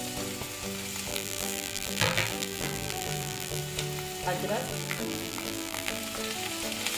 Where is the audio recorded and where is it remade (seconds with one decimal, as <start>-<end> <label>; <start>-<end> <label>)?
0.0-1.1 recorded; 1.1-3.6 remade; 3.6-4.6 recorded; 4.6-6.0 remade; 6.0-7.0 recorded